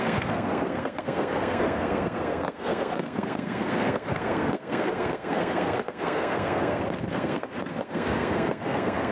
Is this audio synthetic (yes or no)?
yes